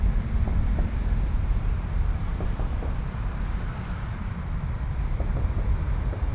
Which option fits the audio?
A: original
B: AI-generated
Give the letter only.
B